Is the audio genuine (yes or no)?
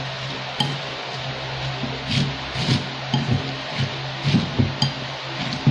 yes